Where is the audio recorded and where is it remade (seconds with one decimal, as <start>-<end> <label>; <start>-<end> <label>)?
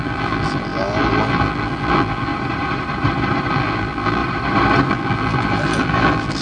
0.0-2.3 remade; 2.3-3.5 recorded; 3.5-4.2 remade; 4.2-4.9 recorded; 4.9-6.4 remade